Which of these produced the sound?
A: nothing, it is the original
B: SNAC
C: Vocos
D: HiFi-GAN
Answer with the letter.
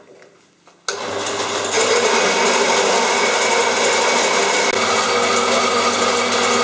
A